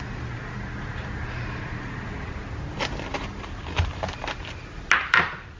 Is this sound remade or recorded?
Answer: recorded